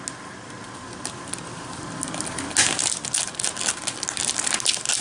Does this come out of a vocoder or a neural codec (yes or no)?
no